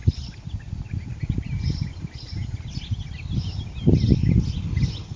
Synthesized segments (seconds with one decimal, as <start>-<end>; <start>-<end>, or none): none

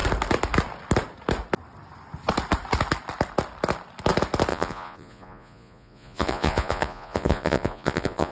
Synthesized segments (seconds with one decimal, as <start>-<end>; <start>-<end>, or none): 4.5-8.3

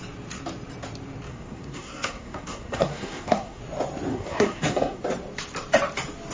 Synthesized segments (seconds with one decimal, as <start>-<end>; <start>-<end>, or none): 1.3-3.6; 4.1-5.0

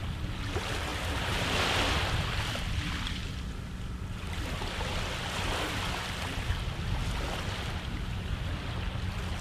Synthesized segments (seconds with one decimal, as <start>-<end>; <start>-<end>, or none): none

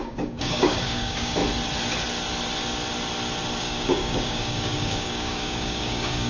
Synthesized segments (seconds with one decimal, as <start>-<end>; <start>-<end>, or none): 0.0-1.4; 3.6-6.3